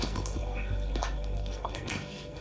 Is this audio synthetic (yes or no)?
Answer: yes